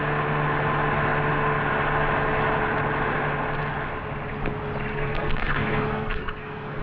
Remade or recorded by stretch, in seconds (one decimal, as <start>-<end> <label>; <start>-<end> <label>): 0.0-4.9 recorded; 4.9-6.8 remade